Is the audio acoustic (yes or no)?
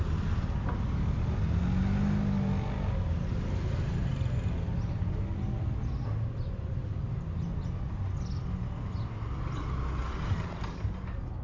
yes